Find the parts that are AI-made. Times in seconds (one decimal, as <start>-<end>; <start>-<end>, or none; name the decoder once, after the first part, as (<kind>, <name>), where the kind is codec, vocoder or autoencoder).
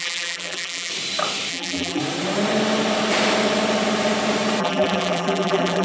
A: 0.0-0.9 (vocoder, BigVGAN v2); 1.5-2.0; 4.6-5.8